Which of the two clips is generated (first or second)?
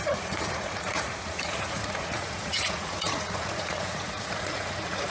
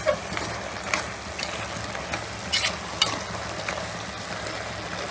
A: first